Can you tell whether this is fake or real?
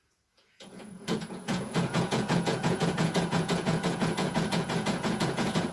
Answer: fake